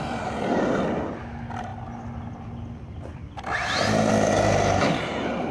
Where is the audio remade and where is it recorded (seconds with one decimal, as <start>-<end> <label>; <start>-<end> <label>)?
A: 0.0-5.5 recorded